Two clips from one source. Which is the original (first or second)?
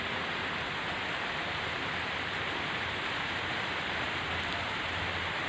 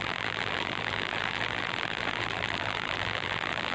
first